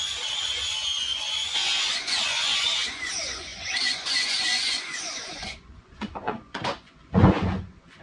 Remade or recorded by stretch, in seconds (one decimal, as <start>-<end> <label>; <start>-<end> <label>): 0.0-8.0 remade